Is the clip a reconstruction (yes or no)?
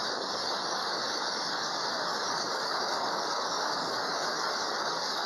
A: yes